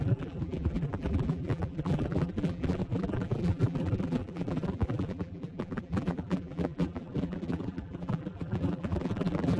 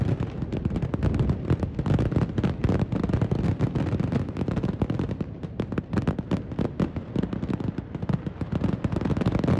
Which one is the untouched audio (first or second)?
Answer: second